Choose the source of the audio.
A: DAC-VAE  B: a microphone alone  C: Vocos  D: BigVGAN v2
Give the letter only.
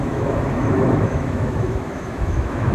A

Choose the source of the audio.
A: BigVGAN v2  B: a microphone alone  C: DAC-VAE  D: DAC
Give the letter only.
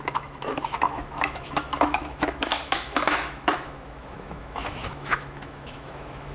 C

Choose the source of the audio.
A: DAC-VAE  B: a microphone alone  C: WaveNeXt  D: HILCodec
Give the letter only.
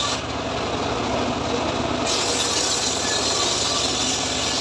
B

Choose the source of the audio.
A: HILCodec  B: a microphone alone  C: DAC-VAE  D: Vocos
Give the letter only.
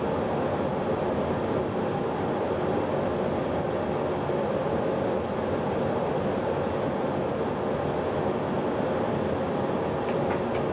B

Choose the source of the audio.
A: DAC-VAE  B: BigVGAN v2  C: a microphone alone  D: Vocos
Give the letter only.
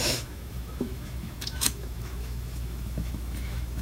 A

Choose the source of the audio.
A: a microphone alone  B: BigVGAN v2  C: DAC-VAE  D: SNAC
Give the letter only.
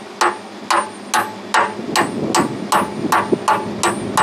A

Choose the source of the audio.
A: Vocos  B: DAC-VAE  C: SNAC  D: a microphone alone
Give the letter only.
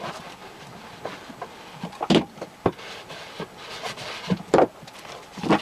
D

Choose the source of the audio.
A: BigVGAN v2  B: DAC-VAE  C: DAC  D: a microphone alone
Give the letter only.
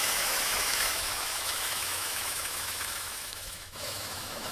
B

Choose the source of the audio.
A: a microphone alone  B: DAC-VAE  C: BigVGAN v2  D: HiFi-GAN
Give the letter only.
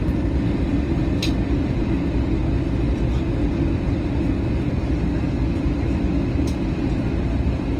A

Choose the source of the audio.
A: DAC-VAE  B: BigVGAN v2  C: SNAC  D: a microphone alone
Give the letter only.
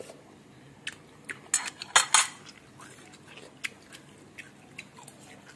D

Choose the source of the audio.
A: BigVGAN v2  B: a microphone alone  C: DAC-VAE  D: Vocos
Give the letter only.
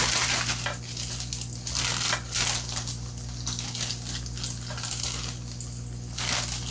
B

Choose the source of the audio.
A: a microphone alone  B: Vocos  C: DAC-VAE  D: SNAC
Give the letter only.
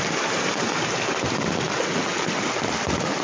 A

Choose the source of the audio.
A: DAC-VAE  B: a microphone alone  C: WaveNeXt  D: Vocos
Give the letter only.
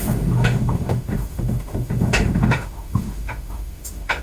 A